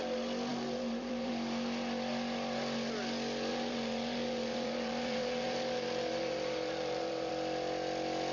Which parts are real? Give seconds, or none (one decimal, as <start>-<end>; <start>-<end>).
0.0-0.5; 1.3-3.5; 7.3-8.3